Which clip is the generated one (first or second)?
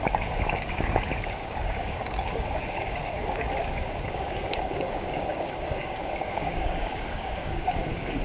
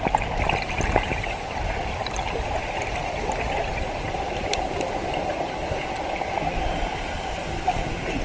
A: first